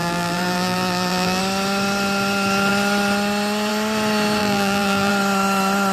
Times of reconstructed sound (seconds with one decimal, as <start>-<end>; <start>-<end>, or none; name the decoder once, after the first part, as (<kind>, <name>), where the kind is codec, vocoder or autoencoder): 0.0-1.4 (vocoder, BigVGAN v2); 4.4-5.1